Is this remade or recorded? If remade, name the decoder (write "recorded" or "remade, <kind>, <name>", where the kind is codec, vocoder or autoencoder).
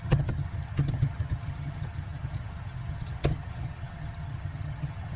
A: remade, vocoder, HiFi-GAN